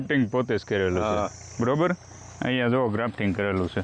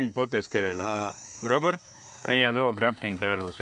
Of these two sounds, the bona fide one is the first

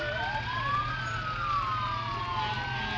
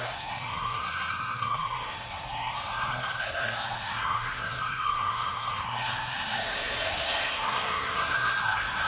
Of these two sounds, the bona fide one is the first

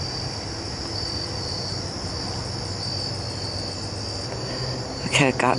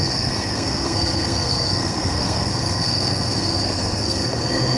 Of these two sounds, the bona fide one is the first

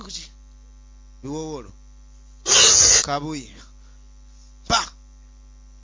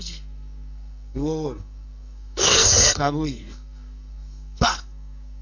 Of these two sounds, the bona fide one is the first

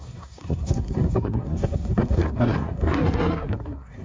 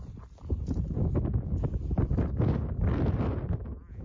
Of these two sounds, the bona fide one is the second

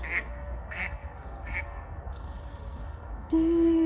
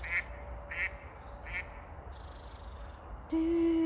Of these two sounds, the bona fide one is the second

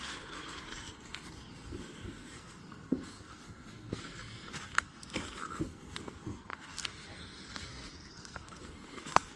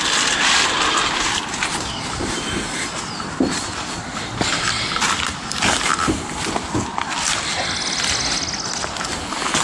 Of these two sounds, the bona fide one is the second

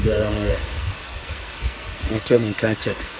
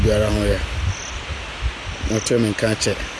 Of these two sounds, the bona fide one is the second